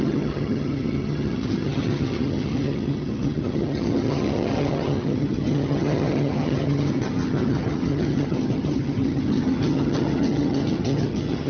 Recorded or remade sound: remade